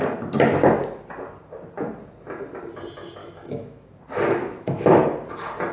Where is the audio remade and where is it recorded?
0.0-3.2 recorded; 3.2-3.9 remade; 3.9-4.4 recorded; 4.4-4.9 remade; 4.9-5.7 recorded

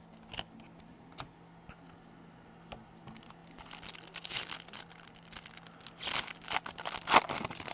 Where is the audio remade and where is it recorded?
0.0-7.7 recorded

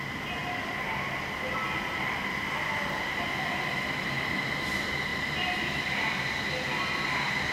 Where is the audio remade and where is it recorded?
0.0-5.1 recorded; 5.1-6.4 remade; 6.4-7.5 recorded

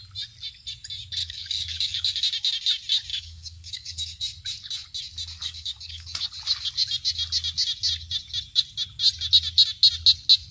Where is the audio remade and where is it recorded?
0.0-1.2 recorded; 1.2-2.2 remade; 2.2-3.1 recorded; 3.1-4.2 remade; 4.2-5.4 recorded; 5.4-6.3 remade; 6.3-10.5 recorded

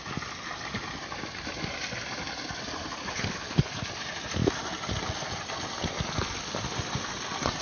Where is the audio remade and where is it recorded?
0.0-3.1 recorded; 3.1-3.7 remade; 3.7-7.6 recorded

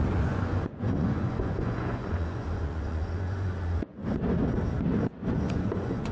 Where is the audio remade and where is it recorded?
0.0-4.0 remade; 4.0-5.3 recorded; 5.3-6.1 remade

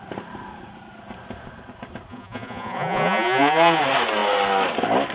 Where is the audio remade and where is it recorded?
0.0-2.1 recorded; 2.1-3.8 remade; 3.8-5.1 recorded